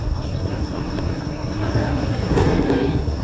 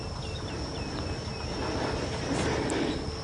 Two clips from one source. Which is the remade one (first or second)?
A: first